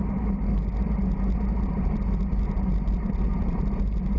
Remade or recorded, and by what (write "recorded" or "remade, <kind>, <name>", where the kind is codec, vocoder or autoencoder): recorded